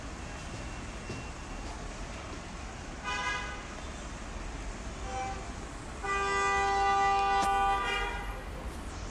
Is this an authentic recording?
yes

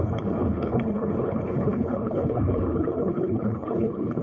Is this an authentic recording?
no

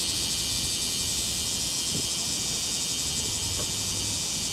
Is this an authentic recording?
yes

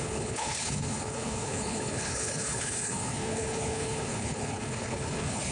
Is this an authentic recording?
no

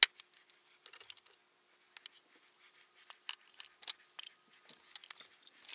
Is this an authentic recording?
yes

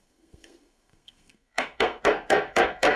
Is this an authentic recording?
no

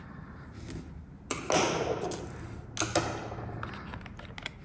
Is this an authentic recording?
yes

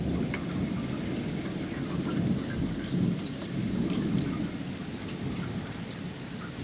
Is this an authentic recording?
yes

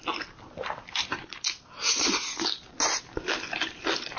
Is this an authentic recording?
yes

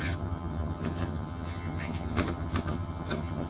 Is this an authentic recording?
no